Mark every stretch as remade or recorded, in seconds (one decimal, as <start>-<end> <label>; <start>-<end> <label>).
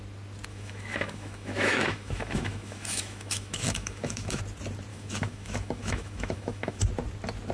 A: 0.0-0.5 recorded; 0.5-4.4 remade; 4.4-4.9 recorded; 4.9-6.8 remade; 6.8-7.5 recorded